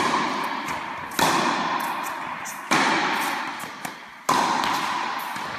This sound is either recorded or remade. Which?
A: recorded